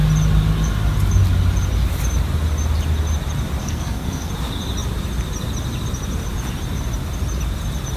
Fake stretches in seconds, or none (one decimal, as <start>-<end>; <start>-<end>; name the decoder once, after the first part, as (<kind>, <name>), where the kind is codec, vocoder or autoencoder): 3.6-4.3 (codec, SNAC)